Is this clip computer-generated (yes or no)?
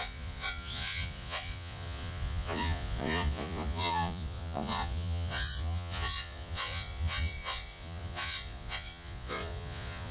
yes